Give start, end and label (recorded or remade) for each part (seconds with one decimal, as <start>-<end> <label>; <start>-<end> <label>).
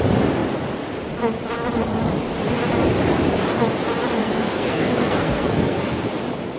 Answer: 0.0-4.2 recorded; 4.2-6.0 remade; 6.0-6.6 recorded